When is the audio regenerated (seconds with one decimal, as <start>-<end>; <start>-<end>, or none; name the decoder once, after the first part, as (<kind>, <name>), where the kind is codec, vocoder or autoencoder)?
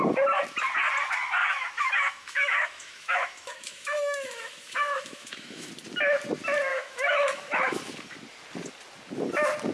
1.4-5.7 (autoencoder, DAC-VAE); 6.7-7.8